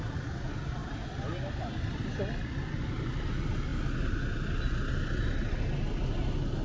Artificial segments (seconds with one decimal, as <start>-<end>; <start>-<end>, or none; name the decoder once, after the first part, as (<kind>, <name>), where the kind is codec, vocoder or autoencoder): none